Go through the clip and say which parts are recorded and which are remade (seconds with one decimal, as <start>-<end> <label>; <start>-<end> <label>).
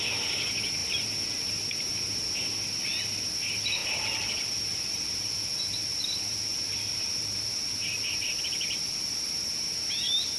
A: 0.0-0.8 recorded; 0.8-1.5 remade; 1.5-3.8 recorded; 3.8-8.4 remade; 8.4-10.4 recorded